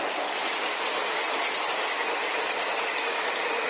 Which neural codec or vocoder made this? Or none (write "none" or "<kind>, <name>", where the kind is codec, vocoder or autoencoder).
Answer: none